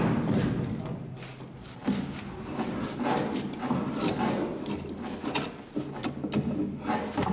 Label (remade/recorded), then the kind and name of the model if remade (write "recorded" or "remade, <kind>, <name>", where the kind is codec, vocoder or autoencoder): recorded